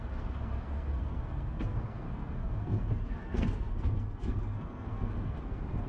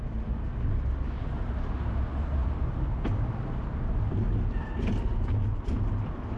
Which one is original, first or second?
second